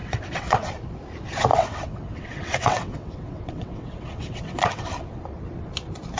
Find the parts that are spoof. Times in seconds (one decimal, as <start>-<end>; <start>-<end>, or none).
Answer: 0.0-0.7; 1.5-5.2